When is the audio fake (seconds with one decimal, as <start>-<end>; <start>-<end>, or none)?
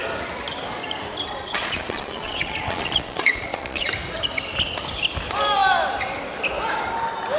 1.4-3.9